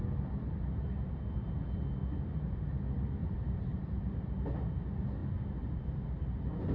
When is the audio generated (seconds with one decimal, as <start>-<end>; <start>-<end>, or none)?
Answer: 3.2-4.0